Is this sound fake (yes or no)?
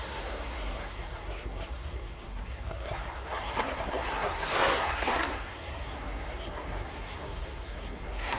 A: yes